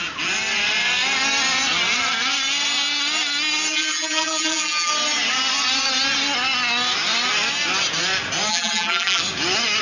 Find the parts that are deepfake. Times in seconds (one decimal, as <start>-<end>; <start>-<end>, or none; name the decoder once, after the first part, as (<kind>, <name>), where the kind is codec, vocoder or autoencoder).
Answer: 3.7-4.9 (vocoder, BigVGAN v2); 8.5-9.2